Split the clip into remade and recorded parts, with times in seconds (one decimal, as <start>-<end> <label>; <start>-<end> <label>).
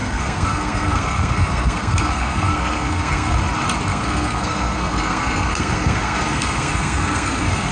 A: 0.0-3.4 remade; 3.4-3.9 recorded; 3.9-7.7 remade